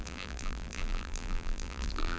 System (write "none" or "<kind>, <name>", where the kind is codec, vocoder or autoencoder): vocoder, BigVGAN v2